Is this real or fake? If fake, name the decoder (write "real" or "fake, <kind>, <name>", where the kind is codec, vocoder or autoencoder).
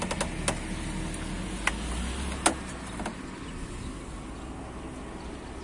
real